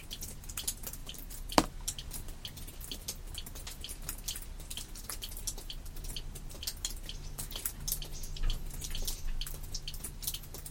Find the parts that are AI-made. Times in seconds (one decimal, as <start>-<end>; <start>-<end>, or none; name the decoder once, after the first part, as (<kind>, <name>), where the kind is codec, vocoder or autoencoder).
1.0-1.5 (vocoder, BigVGAN v2)